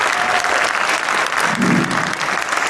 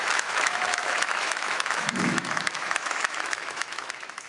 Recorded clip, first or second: first